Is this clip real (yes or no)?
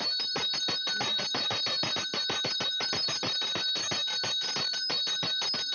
yes